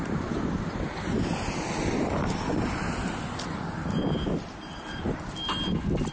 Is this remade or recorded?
recorded